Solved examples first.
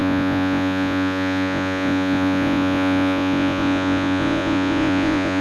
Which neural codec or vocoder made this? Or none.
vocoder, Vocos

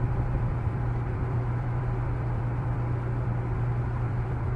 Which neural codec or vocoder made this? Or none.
vocoder, BigVGAN v2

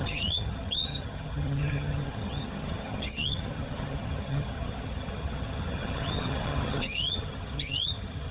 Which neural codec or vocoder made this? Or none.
vocoder, HiFi-GAN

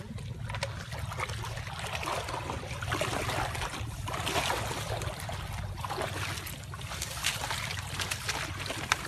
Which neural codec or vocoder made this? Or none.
none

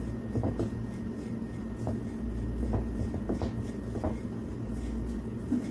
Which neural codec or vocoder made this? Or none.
none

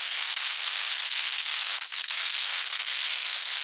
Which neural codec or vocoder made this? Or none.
codec, SNAC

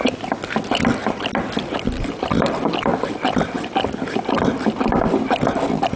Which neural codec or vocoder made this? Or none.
none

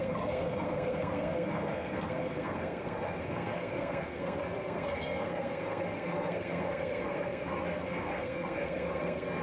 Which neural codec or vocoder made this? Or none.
codec, SNAC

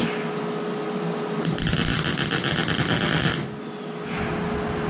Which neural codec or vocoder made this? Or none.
none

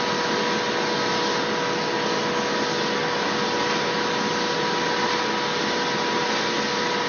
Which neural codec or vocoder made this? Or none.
none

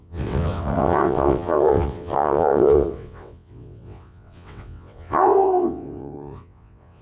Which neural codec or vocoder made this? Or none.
vocoder, WaveNeXt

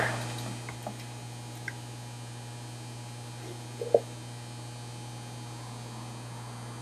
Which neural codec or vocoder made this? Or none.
none